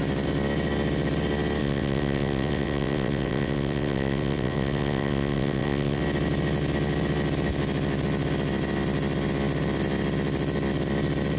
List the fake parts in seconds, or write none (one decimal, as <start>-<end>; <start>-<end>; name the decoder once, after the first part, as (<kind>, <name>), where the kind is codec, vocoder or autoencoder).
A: 1.6-6.0 (vocoder, WaveNeXt)